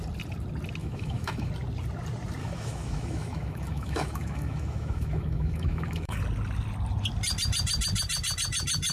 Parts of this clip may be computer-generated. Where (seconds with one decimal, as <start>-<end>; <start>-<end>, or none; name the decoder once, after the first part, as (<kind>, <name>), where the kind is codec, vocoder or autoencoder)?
0.8-1.5 (autoencoder, DAC-VAE); 2.4-6.2